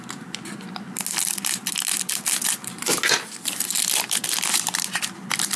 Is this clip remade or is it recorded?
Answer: recorded